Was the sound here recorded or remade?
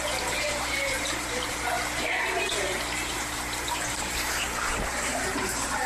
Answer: remade